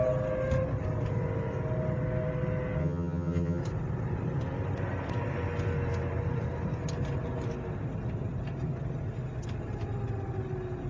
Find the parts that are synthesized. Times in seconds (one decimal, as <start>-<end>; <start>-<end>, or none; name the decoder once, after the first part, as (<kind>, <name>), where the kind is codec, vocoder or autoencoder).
2.8-3.6 (vocoder, HiFi-GAN)